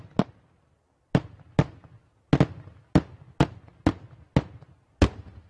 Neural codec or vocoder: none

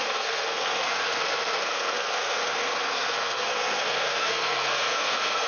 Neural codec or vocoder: codec, SNAC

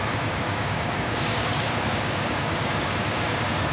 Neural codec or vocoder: codec, DAC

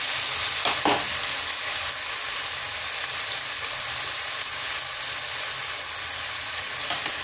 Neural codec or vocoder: none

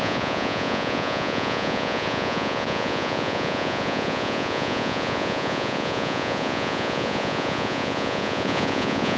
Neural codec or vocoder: vocoder, Vocos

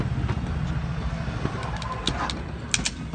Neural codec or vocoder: none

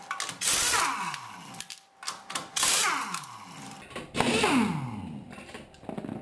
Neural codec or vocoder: none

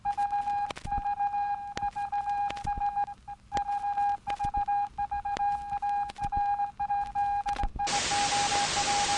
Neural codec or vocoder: none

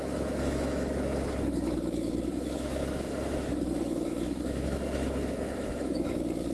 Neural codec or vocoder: autoencoder, DAC-VAE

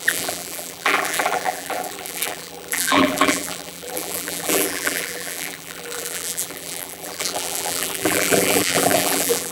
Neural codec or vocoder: vocoder, BigVGAN v2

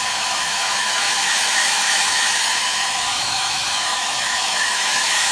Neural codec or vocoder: autoencoder, DAC-VAE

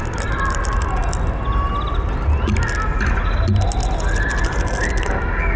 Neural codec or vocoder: none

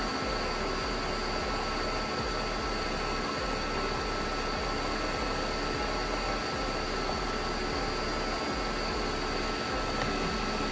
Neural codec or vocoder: none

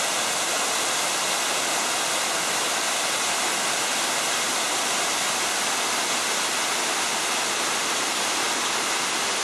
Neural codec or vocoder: none